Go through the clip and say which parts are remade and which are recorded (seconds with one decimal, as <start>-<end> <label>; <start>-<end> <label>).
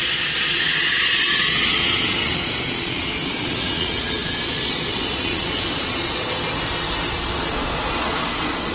0.0-6.1 remade; 6.1-7.1 recorded; 7.1-8.7 remade